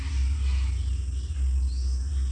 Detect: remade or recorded recorded